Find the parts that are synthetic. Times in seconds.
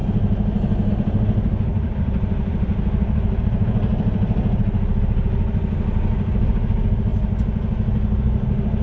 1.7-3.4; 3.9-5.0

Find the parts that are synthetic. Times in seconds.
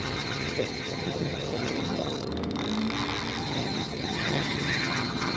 0.0-2.3; 3.4-5.4